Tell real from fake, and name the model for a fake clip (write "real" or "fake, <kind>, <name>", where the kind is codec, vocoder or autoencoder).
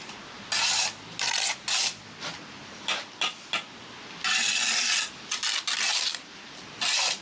real